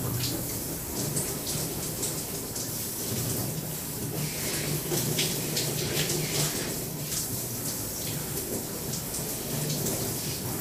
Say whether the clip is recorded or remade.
recorded